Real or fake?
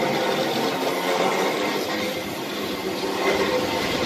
real